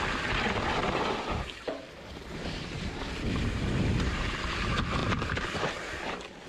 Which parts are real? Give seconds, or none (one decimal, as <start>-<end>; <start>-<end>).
0.0-0.8; 4.2-5.0; 5.7-6.5

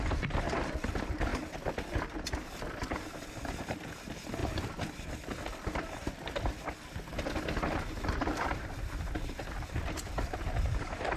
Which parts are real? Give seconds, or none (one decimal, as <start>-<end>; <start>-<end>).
1.3-2.5; 4.4-4.9; 7.1-7.7

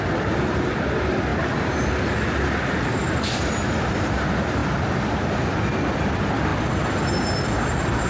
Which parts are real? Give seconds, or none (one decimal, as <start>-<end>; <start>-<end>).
1.3-2.4; 4.6-5.4

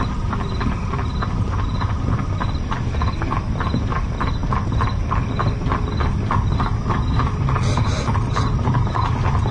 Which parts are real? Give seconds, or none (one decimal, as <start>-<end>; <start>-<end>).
0.0-9.5